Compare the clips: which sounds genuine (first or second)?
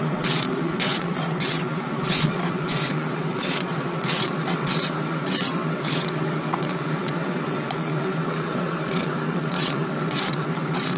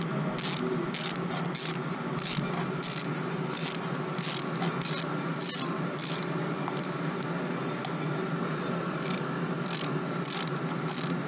second